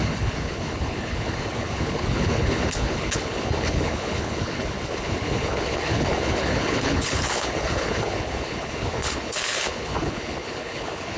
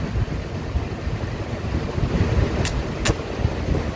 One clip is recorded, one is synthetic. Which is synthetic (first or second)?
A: first